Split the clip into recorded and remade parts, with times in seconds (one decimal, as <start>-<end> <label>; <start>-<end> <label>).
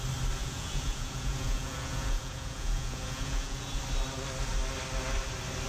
0.0-0.4 recorded; 0.4-3.8 remade; 3.8-5.7 recorded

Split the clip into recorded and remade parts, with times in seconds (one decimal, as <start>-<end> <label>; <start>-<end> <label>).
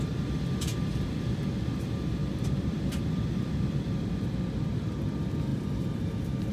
0.0-2.2 recorded; 2.2-5.0 remade; 5.0-5.5 recorded; 5.5-6.1 remade; 6.1-6.5 recorded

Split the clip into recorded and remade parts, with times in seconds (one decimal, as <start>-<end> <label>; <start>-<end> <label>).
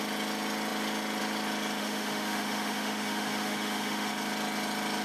0.0-1.8 recorded; 1.8-4.1 remade; 4.1-5.0 recorded